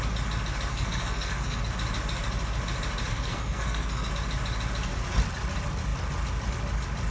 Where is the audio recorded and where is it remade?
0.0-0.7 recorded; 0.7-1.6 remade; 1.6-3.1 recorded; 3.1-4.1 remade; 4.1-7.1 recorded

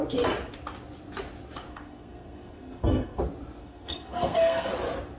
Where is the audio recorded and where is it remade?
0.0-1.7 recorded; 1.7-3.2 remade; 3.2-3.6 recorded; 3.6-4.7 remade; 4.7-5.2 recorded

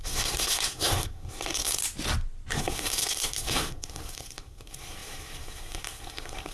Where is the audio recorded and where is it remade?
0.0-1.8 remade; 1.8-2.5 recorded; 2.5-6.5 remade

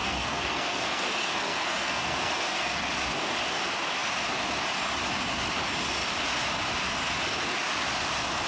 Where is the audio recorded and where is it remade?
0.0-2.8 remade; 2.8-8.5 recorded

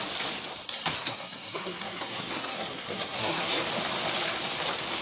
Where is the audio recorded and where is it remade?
0.0-0.6 recorded; 0.6-3.6 remade; 3.6-5.0 recorded

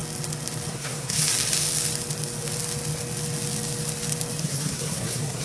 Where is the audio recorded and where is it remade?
0.0-0.7 recorded; 0.7-1.2 remade; 1.2-4.4 recorded; 4.4-5.4 remade